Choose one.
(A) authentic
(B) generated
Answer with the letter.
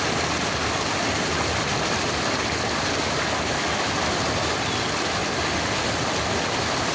A